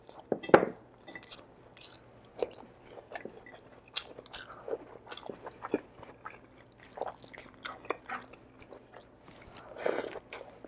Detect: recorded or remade recorded